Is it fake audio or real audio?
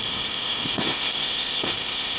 fake